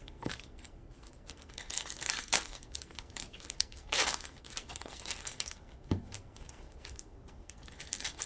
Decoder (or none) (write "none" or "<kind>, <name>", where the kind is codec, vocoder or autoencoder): codec, SNAC